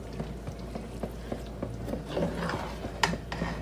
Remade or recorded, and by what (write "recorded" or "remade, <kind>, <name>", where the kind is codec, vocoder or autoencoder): recorded